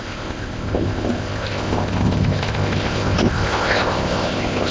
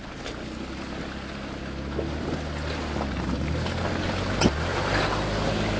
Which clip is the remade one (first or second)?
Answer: first